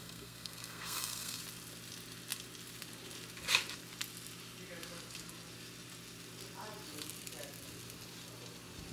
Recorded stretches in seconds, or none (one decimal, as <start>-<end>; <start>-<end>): 1.4-8.9